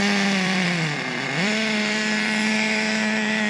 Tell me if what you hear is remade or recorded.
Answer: remade